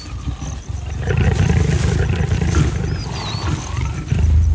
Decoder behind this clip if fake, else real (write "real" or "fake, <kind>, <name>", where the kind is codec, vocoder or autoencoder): real